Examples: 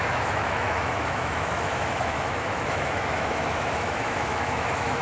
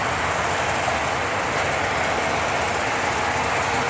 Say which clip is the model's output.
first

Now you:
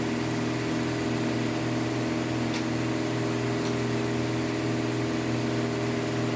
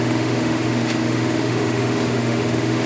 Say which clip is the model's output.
second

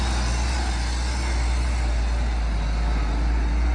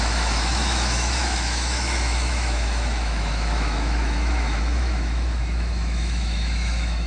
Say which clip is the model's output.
second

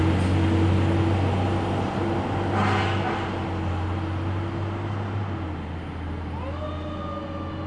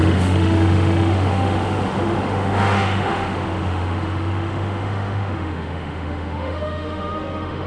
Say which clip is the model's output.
second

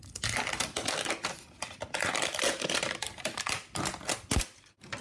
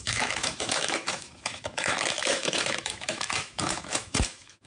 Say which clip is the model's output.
second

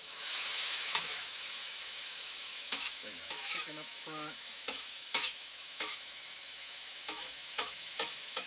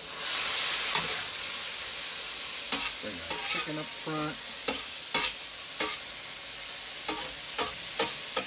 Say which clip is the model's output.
first